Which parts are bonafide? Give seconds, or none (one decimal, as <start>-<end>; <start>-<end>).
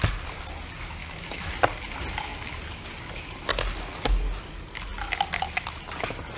0.0-1.0; 1.5-6.4